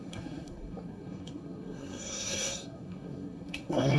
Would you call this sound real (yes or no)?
no